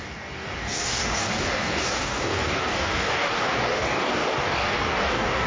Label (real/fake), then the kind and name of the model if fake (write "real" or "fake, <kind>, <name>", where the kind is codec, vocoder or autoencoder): fake, codec, DAC